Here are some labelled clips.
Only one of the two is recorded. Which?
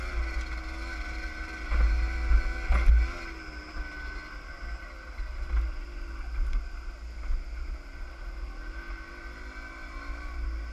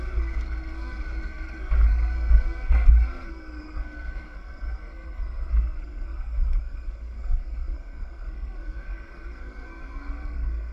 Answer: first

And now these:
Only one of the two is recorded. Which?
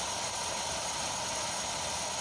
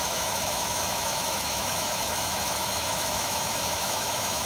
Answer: first